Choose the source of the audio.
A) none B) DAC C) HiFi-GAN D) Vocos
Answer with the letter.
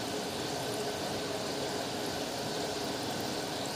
A